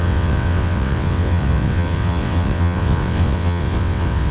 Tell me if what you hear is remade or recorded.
remade